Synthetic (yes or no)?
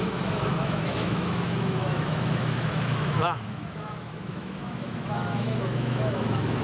yes